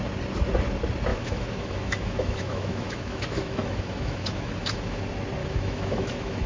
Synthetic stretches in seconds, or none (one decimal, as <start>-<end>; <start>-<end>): 1.1-5.0; 5.4-6.5